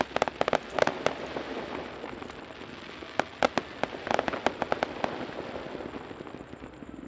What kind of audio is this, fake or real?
real